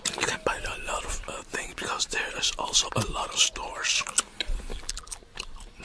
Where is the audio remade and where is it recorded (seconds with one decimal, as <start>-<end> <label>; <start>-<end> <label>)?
0.0-4.7 recorded; 4.7-5.2 remade; 5.2-5.8 recorded